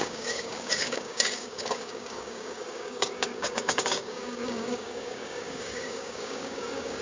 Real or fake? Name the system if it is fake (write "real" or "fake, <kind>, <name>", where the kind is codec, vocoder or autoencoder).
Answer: fake, codec, DAC